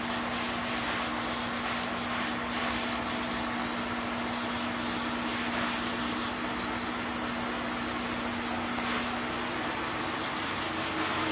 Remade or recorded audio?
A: recorded